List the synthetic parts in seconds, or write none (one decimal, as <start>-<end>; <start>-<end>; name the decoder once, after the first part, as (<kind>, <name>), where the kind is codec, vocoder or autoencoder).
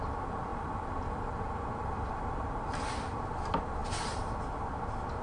0.5-3.2 (vocoder, BigVGAN v2)